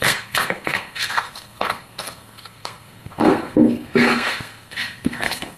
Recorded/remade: remade